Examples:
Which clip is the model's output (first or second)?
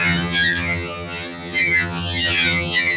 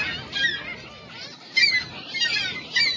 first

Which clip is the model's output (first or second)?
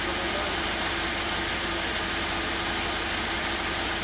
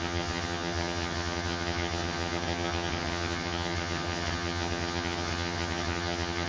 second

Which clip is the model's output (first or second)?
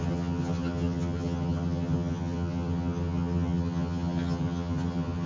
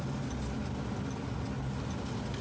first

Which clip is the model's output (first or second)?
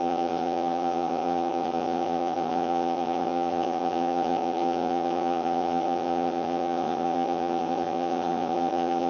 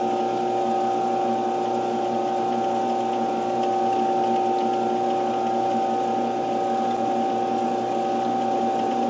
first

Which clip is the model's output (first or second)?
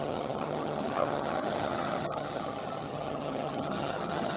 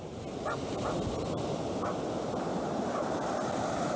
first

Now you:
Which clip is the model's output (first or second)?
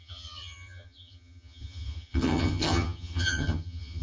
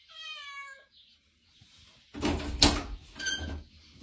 first